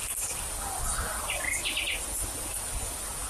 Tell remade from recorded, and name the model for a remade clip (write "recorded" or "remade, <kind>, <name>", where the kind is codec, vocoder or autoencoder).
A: recorded